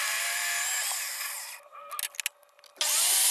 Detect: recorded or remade recorded